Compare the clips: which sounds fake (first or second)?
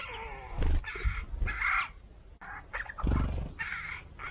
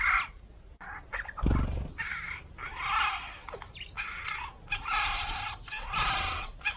second